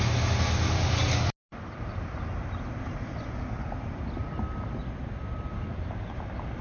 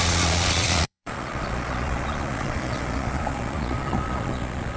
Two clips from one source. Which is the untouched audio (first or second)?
first